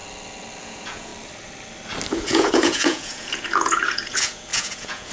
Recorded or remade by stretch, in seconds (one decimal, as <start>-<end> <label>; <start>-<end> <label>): 0.0-0.6 recorded; 0.6-1.1 remade; 1.1-2.1 recorded; 2.1-5.1 remade